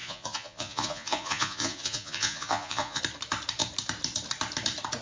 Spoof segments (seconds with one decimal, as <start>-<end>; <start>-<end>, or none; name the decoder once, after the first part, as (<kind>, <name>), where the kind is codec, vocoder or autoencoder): 0.0-3.0 (vocoder, Vocos)